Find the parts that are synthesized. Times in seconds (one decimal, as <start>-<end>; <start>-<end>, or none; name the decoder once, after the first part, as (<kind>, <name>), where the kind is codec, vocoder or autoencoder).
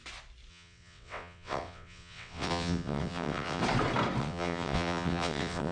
0.5-3.6 (vocoder, WaveNeXt); 4.2-5.7